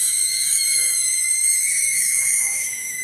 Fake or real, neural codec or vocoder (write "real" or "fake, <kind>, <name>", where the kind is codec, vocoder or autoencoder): fake, autoencoder, DAC-VAE